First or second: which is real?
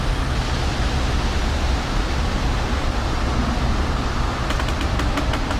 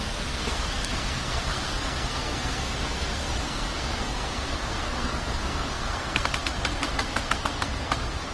first